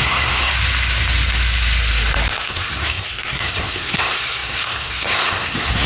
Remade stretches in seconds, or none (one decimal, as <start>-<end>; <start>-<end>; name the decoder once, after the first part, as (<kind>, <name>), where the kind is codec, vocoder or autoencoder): 0.0-0.5 (codec, SNAC); 2.3-5.9